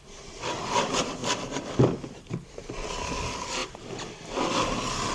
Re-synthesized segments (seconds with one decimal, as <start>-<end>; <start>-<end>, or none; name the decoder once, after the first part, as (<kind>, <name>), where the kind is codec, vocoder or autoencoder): none